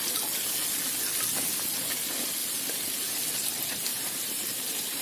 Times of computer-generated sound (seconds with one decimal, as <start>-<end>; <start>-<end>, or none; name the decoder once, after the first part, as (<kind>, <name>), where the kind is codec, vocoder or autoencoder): 2.4-3.1 (vocoder, BigVGAN v2); 3.9-5.0